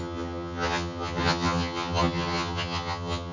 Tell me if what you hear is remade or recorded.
remade